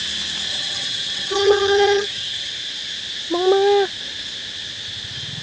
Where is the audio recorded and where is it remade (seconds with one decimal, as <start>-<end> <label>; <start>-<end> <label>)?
0.0-0.5 recorded; 0.5-2.5 remade; 2.5-5.4 recorded